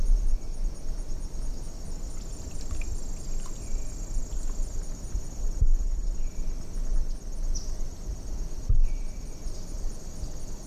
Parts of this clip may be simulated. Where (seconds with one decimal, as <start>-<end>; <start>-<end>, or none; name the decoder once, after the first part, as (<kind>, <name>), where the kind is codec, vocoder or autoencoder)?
none